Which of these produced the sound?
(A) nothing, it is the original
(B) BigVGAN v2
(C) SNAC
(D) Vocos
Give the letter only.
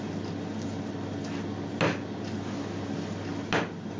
A